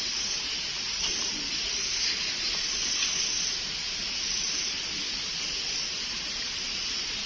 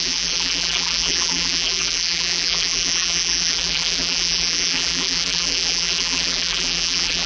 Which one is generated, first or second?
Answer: second